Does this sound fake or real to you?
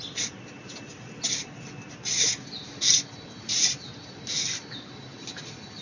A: real